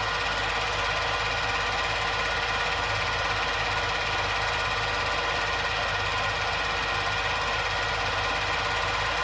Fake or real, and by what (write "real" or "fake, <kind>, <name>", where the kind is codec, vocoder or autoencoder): real